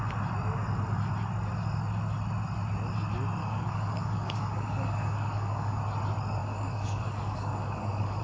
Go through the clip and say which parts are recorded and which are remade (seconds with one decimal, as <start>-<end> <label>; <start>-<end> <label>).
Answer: 0.0-3.4 recorded; 3.4-5.8 remade; 5.8-6.4 recorded; 6.4-8.2 remade